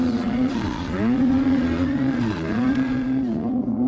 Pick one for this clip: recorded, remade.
remade